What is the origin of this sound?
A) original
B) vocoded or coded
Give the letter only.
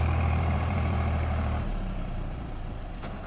B